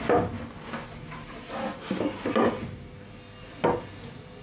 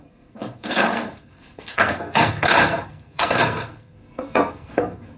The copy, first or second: second